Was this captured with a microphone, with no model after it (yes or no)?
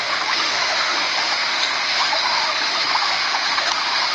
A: no